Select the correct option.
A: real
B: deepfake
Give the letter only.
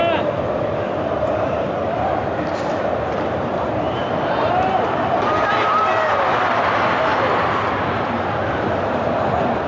A